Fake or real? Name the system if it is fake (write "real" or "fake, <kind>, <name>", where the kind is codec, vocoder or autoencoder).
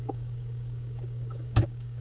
fake, codec, DAC